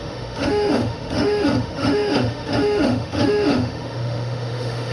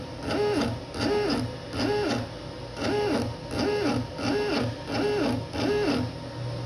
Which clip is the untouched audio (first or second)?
second